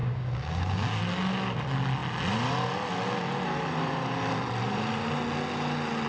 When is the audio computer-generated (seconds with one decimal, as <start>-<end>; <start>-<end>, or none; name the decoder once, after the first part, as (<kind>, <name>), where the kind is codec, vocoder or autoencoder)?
0.0-1.0 (codec, DAC)